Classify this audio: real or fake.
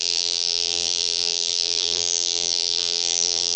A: fake